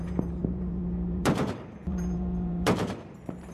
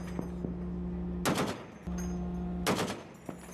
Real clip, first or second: second